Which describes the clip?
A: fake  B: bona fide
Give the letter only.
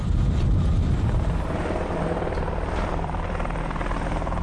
A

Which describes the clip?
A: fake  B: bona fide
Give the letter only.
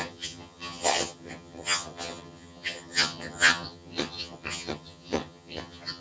A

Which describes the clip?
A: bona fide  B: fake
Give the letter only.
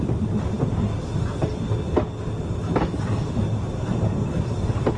A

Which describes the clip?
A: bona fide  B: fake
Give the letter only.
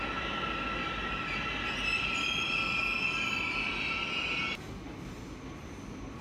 A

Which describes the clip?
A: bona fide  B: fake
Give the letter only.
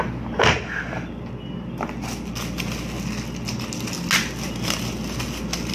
A